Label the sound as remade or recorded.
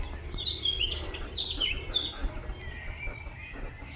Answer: recorded